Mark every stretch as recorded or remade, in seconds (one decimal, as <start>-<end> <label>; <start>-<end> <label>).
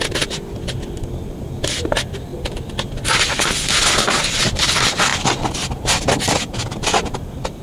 0.0-7.6 recorded